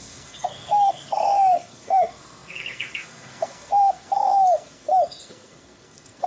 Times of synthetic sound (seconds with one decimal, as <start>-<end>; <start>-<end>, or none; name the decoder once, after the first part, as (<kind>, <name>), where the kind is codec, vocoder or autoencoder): 0.0-6.3 (codec, SNAC)